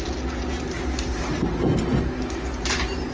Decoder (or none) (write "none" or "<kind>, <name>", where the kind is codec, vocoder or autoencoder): none